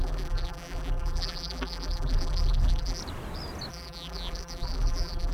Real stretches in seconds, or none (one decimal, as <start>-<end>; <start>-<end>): 3.0-3.7